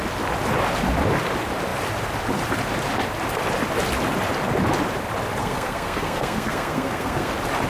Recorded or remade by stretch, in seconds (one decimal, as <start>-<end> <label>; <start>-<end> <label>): 0.0-5.4 recorded; 5.4-7.3 remade; 7.3-7.7 recorded